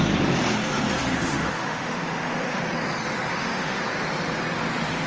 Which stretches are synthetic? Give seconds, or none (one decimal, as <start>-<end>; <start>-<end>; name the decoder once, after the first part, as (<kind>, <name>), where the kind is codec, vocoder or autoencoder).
1.0-2.6 (autoencoder, DAC-VAE); 3.3-3.8